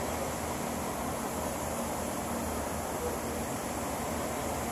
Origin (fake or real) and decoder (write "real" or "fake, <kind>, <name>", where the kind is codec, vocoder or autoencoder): real